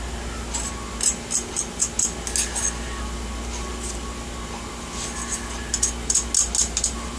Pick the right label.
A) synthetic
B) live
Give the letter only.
B